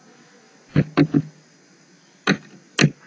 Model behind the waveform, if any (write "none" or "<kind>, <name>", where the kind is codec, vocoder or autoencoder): none